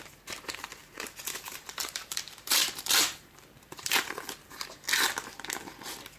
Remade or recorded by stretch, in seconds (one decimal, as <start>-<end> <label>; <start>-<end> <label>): 0.0-0.8 recorded; 0.8-4.5 remade; 4.5-6.2 recorded